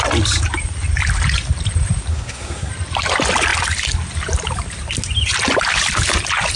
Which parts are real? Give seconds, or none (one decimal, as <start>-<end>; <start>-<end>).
0.0-2.1; 2.7-6.6